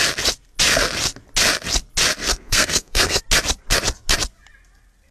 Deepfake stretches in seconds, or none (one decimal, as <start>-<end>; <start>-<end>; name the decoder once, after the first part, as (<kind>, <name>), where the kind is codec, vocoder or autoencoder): 2.2-3.2 (codec, SNAC)